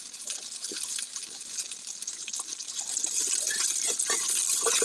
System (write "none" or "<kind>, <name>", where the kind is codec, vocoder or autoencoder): none